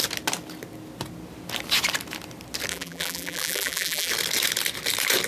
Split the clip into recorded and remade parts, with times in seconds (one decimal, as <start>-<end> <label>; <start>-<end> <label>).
0.0-2.7 recorded; 2.7-4.1 remade; 4.1-5.3 recorded